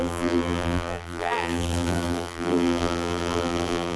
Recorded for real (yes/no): no